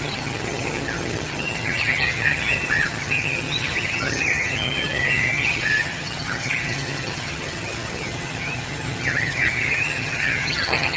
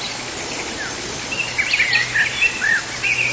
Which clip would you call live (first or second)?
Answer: second